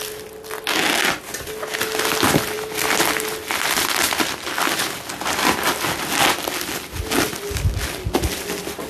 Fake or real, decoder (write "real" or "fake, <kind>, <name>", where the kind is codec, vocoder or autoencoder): real